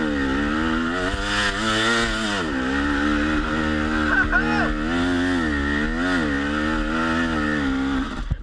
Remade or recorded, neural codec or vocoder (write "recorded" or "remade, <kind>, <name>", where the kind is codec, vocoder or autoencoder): recorded